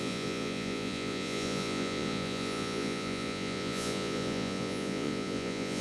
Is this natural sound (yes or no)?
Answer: no